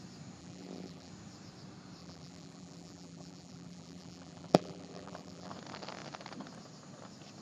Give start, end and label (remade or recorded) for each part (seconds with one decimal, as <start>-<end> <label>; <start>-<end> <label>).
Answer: 0.0-0.4 recorded; 0.4-1.1 remade; 1.1-2.0 recorded; 2.0-5.5 remade; 5.5-7.4 recorded